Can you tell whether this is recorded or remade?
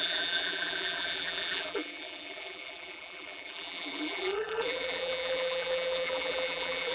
remade